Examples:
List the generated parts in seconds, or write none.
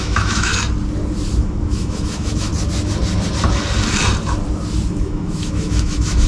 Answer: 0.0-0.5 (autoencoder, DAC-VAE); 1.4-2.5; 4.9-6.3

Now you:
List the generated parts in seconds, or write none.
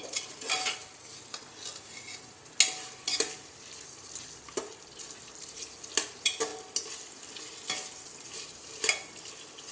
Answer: none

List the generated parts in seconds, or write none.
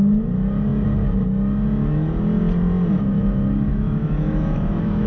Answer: 3.7-5.1 (autoencoder, DAC-VAE)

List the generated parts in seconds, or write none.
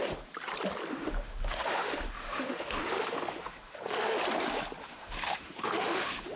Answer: 0.9-4.2 (autoencoder, DAC-VAE); 4.8-6.4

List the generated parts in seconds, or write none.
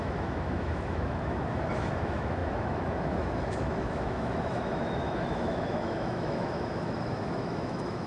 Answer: 0.0-8.1 (autoencoder, DAC-VAE)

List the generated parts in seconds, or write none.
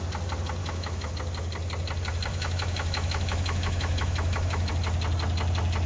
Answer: 0.6-1.1 (autoencoder, DAC-VAE); 2.3-4.7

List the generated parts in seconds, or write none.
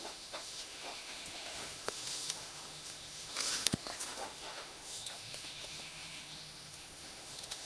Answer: 0.0-7.7 (autoencoder, DAC-VAE)